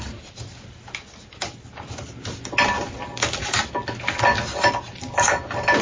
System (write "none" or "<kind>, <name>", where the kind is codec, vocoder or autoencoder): none